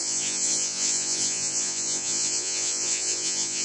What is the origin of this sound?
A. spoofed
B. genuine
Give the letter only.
A